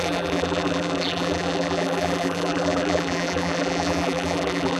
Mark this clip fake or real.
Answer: fake